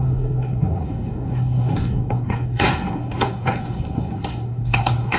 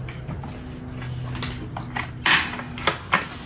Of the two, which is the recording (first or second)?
second